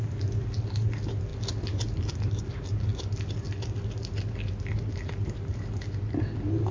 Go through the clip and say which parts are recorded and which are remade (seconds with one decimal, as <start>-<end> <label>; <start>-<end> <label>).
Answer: 0.0-6.7 recorded